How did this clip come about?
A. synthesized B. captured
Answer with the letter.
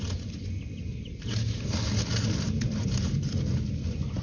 B